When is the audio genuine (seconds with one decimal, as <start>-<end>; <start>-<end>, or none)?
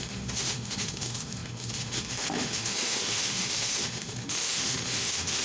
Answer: none